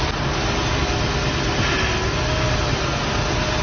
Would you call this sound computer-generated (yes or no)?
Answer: no